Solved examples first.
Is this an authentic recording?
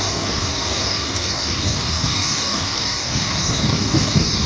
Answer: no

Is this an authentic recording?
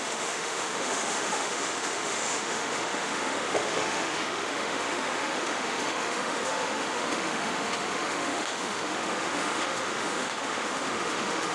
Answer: no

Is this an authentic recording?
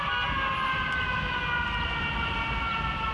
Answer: yes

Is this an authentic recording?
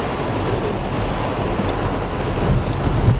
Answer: yes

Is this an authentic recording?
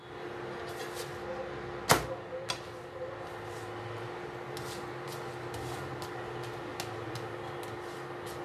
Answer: yes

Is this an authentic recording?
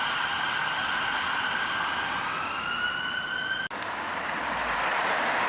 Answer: yes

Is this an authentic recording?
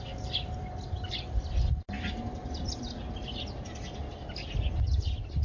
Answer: yes